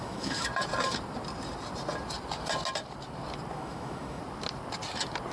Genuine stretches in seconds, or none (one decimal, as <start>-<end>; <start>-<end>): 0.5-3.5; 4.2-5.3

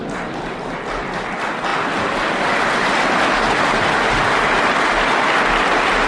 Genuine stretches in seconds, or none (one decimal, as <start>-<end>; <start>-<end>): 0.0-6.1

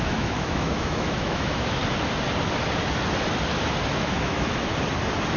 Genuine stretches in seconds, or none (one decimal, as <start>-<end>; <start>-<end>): 1.8-3.9; 4.7-5.4